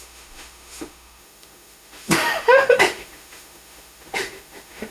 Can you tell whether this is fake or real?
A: fake